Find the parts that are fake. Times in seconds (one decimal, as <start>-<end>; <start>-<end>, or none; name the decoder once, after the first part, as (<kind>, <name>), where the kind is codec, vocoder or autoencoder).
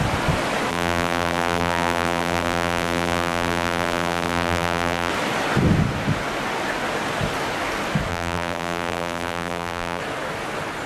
0.7-5.1 (vocoder, BigVGAN v2); 8.1-10.0